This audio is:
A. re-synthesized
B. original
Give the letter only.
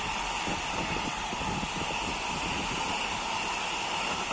B